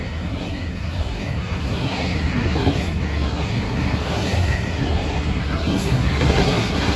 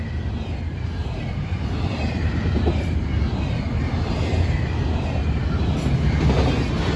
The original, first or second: second